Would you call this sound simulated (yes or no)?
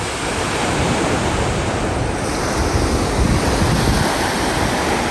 no